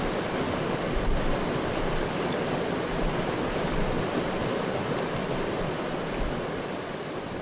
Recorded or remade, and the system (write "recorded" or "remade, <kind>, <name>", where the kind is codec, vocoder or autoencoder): recorded